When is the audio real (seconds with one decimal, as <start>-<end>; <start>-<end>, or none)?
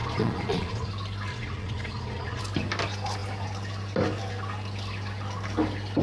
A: 0.9-1.3; 2.4-6.0